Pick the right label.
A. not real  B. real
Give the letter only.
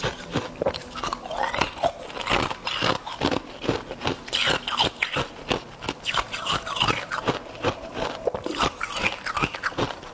B